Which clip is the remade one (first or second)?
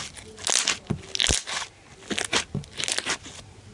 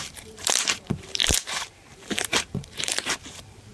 second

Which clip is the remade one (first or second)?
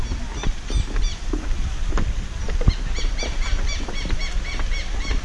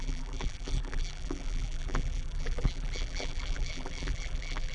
second